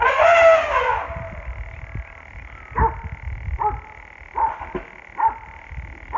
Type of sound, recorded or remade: recorded